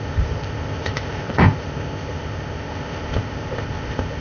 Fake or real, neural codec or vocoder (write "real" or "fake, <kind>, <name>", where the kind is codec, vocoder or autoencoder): fake, codec, ZipCodec